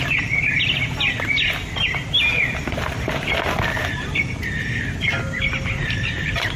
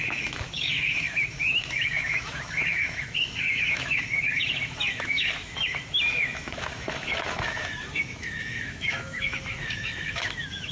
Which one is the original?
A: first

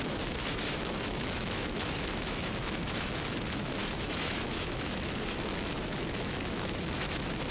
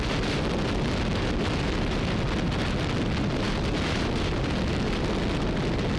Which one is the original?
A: second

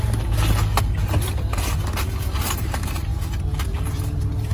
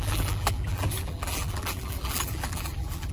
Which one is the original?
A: first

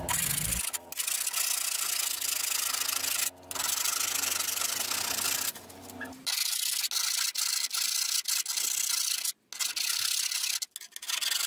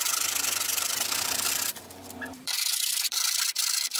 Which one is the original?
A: first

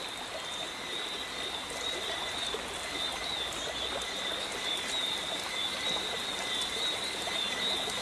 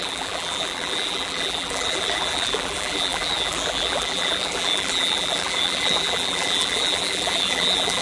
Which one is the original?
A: first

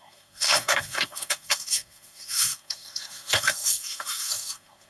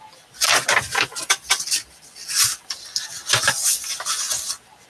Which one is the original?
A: second